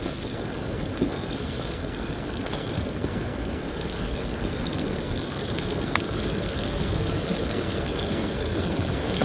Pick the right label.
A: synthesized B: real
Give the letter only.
A